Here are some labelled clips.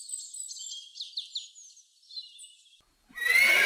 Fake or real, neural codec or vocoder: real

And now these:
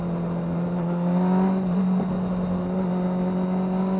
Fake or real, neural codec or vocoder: real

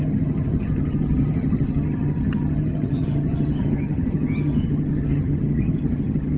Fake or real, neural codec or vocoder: fake, vocoder, HiFi-GAN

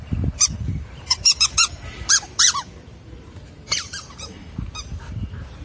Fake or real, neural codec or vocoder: fake, vocoder, BigVGAN v2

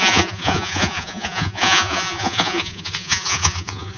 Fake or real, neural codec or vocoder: fake, vocoder, Vocos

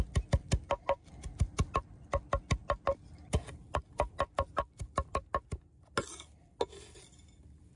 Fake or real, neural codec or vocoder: real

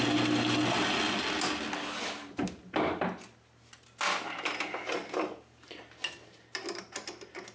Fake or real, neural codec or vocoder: real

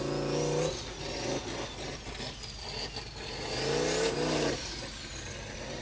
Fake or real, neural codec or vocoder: real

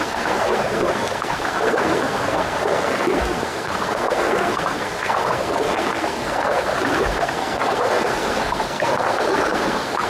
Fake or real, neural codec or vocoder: fake, codec, SNAC